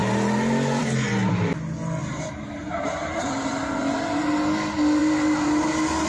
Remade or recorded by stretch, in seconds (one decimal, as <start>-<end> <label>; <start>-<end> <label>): 0.0-2.0 recorded; 2.0-4.2 remade; 4.2-6.1 recorded